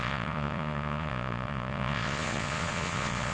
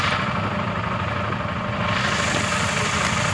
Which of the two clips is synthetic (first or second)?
first